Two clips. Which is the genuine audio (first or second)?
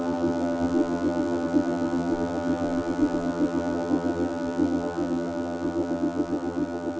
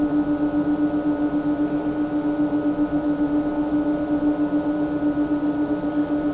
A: second